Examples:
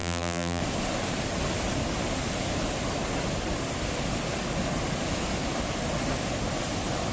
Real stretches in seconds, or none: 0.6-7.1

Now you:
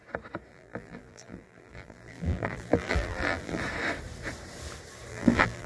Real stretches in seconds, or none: 0.0-0.5; 3.6-5.1

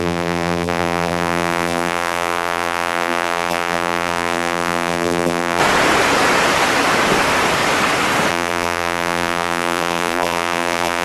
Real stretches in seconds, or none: 5.6-8.3

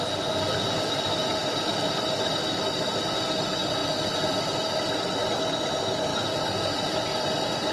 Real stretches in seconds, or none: 0.0-1.2; 3.1-3.8; 5.4-6.1

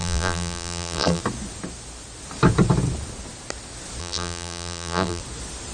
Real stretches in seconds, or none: 1.2-4.0; 5.2-5.7

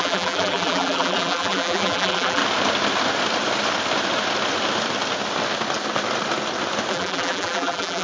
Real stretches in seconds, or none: 2.4-6.9

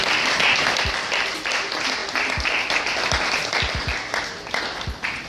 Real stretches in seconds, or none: 0.0-5.3

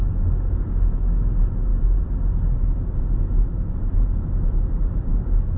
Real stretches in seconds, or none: 0.0-1.7; 5.1-5.6